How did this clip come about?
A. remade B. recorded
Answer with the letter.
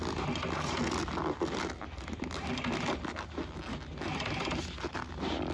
B